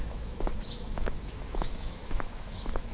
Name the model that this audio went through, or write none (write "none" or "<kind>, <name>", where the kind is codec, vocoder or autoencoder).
autoencoder, DAC-VAE